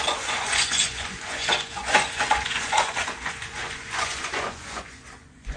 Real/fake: fake